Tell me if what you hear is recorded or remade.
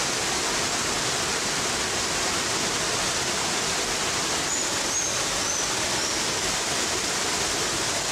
recorded